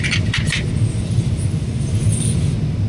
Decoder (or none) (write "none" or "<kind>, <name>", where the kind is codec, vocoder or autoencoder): none